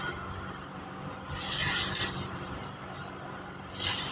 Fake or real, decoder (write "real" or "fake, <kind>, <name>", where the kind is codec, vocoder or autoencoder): real